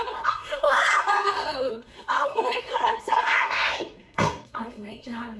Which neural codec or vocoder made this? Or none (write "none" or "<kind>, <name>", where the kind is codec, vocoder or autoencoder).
codec, SNAC